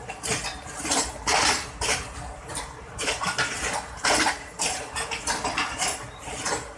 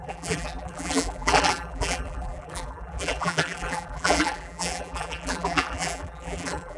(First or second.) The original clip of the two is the first